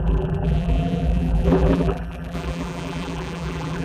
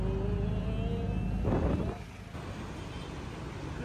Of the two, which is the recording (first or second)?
second